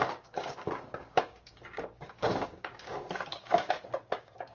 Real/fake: fake